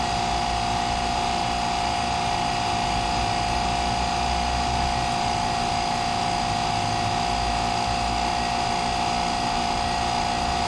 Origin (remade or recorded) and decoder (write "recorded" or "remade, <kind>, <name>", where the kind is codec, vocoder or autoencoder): recorded